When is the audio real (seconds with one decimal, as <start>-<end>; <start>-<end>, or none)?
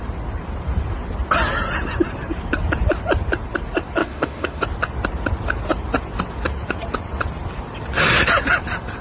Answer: 0.0-4.0; 4.6-9.0